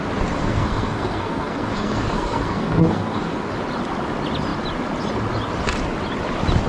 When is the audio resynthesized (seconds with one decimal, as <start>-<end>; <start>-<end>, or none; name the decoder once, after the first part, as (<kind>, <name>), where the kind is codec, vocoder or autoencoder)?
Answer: 0.4-3.5 (codec, SNAC)